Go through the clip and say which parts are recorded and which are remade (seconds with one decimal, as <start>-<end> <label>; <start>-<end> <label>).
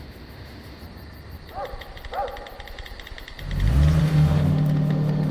0.0-0.8 remade; 0.8-4.0 recorded; 4.0-5.3 remade